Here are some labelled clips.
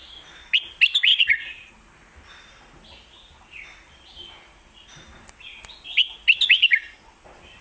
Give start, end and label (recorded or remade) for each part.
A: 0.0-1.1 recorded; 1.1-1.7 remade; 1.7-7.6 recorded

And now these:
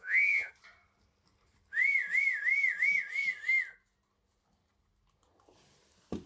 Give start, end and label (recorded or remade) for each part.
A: 0.0-0.5 remade; 0.5-6.3 recorded

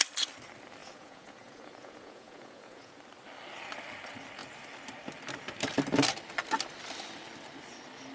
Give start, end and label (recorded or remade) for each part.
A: 0.0-0.8 recorded; 0.8-3.0 remade; 3.0-8.1 recorded

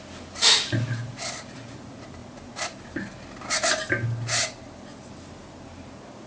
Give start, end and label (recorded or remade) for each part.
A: 0.0-6.3 recorded

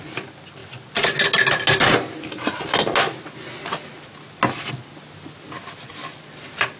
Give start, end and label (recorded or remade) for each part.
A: 0.0-6.8 recorded

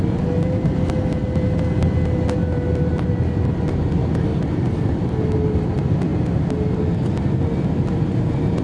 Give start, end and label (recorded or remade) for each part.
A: 0.0-8.6 recorded

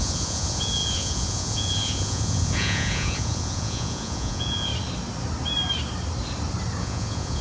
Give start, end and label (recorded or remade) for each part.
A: 0.0-4.7 remade; 4.7-6.8 recorded; 6.8-7.4 remade

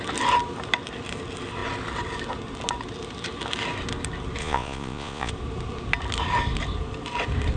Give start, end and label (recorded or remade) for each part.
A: 0.0-4.4 recorded; 4.4-5.3 remade; 5.3-7.6 recorded